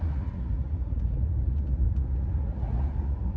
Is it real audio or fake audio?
fake